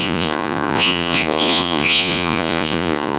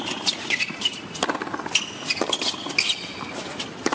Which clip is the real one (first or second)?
second